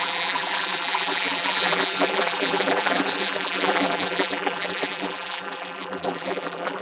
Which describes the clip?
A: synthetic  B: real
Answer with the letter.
A